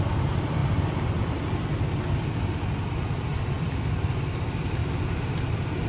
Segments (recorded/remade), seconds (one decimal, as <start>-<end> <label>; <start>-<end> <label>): 0.0-5.9 recorded